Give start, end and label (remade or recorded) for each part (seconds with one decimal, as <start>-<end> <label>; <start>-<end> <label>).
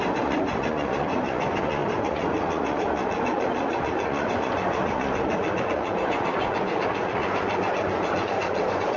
0.0-9.0 remade